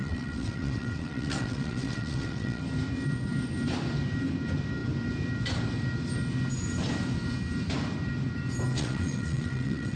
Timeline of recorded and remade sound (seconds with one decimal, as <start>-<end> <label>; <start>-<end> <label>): 0.0-2.6 remade; 2.6-8.7 recorded; 8.7-10.0 remade